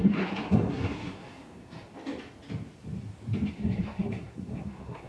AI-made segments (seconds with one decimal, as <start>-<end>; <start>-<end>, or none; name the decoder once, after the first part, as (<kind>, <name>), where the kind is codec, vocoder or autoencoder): 0.0-1.9 (codec, SNAC); 3.5-5.1